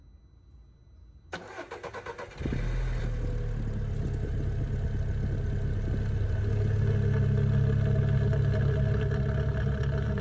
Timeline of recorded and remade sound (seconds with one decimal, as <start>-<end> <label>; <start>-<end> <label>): 0.0-10.2 recorded